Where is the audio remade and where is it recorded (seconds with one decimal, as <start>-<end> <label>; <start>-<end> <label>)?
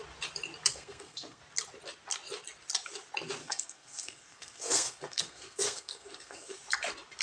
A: 0.0-0.7 recorded; 0.7-1.4 remade; 1.4-3.4 recorded; 3.4-6.6 remade; 6.6-7.2 recorded